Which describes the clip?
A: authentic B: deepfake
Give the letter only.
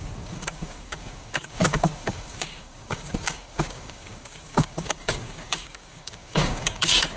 B